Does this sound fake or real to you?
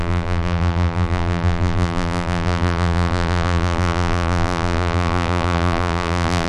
fake